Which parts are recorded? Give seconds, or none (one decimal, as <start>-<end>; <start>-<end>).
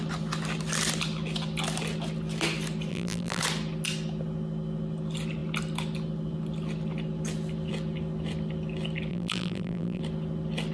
0.0-2.9; 3.4-9.1; 10.0-10.7